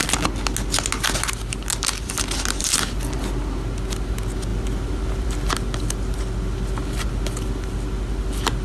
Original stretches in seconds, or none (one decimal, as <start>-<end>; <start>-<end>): 0.0-8.6